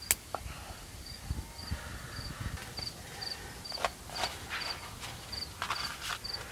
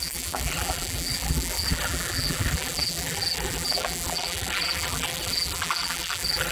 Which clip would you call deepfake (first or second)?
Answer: second